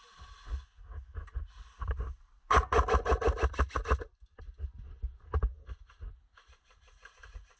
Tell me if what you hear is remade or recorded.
recorded